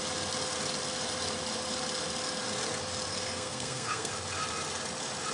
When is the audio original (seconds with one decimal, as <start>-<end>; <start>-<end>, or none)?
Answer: 0.0-3.1; 4.1-5.3